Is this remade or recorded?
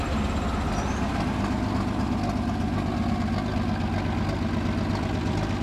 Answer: recorded